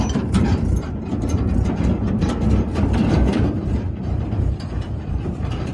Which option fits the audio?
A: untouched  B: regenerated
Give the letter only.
B